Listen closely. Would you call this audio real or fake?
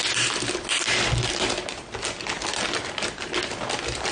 real